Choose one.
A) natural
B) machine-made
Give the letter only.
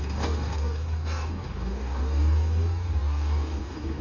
B